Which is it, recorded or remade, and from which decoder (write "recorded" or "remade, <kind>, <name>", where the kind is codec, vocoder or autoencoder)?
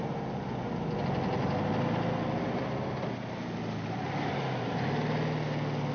recorded